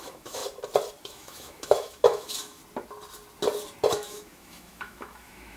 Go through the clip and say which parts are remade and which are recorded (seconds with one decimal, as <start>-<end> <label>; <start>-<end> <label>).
0.0-0.4 remade; 0.4-1.0 recorded; 1.0-2.6 remade; 2.6-3.9 recorded; 3.9-5.6 remade